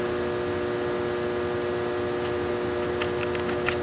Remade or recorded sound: recorded